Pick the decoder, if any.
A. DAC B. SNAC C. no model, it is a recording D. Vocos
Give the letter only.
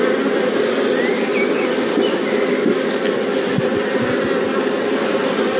C